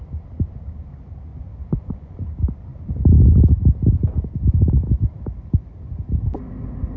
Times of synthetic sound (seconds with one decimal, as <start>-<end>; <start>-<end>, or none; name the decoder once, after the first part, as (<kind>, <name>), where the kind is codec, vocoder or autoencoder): 1.3-2.2 (vocoder, Vocos)